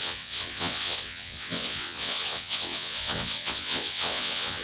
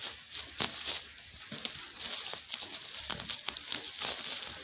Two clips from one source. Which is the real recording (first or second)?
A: second